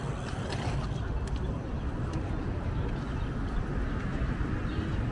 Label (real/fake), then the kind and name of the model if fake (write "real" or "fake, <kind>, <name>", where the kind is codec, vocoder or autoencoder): real